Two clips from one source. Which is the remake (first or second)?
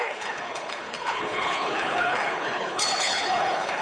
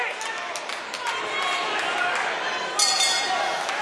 first